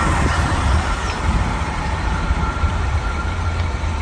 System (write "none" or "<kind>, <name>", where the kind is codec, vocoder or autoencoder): vocoder, BigVGAN v2